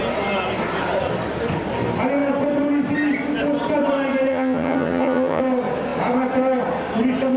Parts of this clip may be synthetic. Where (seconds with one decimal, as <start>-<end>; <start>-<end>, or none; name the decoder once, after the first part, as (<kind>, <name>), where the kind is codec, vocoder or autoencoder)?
4.3-5.4 (vocoder, HiFi-GAN)